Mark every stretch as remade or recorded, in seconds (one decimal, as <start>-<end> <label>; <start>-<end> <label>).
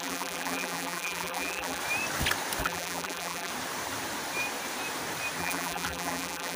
0.0-1.8 remade; 1.8-2.6 recorded; 2.6-3.5 remade; 3.5-5.4 recorded; 5.4-6.6 remade